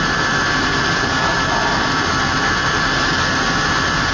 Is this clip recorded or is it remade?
recorded